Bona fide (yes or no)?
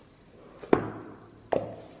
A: yes